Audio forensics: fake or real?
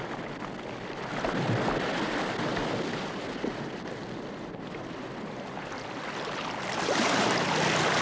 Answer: real